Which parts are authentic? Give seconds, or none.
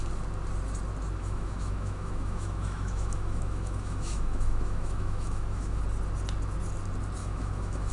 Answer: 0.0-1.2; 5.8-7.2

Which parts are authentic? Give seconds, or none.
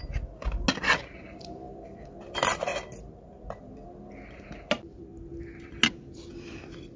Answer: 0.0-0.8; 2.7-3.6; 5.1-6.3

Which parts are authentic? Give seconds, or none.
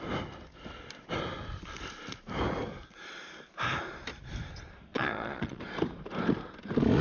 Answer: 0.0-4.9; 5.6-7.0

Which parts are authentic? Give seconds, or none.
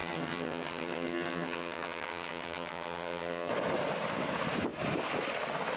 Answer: 3.5-5.8